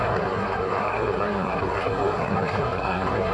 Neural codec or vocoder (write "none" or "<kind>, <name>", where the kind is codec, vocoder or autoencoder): codec, SNAC